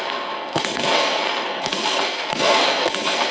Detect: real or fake fake